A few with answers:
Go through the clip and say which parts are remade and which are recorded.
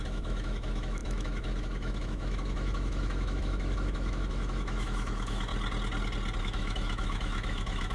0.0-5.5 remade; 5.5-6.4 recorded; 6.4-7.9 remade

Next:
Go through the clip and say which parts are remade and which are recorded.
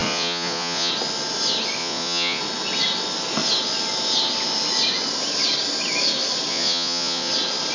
0.0-0.9 remade; 0.9-1.8 recorded; 1.8-2.4 remade; 2.4-6.5 recorded; 6.5-7.3 remade; 7.3-7.7 recorded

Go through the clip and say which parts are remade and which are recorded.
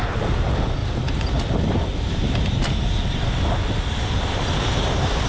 0.0-0.8 remade; 0.8-1.5 recorded; 1.5-5.3 remade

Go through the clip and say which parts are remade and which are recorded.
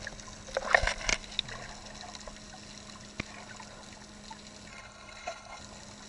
0.0-4.7 recorded; 4.7-5.6 remade; 5.6-6.1 recorded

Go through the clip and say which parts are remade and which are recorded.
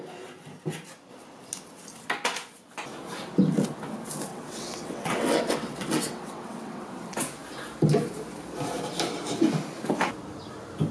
0.0-4.3 recorded; 4.3-6.9 remade; 6.9-10.9 recorded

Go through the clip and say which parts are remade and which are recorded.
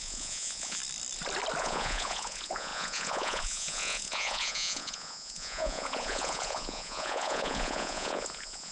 0.0-0.8 remade; 0.8-1.6 recorded; 1.6-8.7 remade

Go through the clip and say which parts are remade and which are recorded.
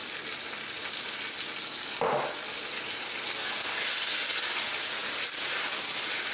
0.0-6.3 recorded